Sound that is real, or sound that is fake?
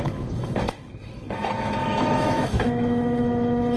fake